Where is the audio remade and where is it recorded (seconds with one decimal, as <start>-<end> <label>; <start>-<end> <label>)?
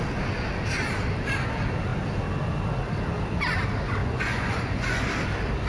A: 0.0-4.0 recorded; 4.0-5.0 remade; 5.0-5.7 recorded